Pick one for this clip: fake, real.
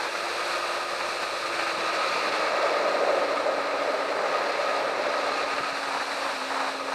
real